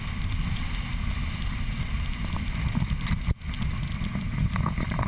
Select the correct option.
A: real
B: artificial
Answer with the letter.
A